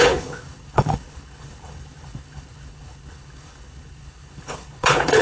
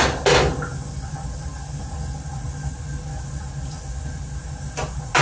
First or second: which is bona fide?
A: second